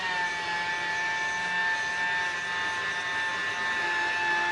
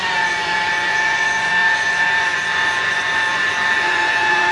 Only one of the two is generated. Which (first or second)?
second